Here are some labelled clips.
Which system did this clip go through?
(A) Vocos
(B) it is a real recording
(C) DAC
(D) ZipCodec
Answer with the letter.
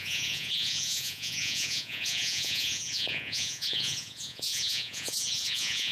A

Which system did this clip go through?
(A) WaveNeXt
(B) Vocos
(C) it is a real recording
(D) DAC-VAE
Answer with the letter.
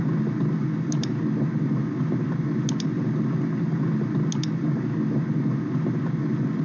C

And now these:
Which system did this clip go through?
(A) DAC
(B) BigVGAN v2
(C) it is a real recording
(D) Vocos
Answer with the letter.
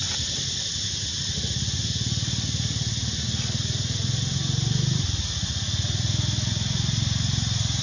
C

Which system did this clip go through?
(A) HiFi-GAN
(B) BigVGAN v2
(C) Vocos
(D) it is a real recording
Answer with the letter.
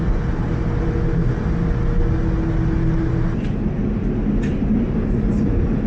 D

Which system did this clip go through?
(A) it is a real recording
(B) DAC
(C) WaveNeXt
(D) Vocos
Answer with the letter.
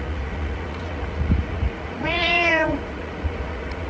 D